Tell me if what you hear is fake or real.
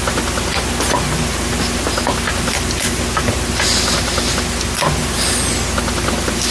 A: real